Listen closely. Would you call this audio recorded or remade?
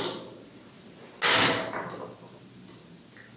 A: recorded